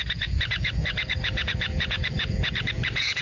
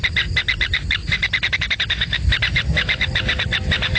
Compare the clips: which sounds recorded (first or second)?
second